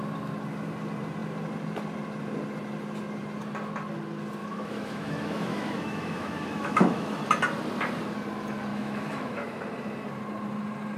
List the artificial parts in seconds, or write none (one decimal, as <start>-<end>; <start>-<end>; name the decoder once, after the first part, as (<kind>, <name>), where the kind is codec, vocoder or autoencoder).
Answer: 4.4-7.2 (autoencoder, DAC-VAE); 8.7-9.6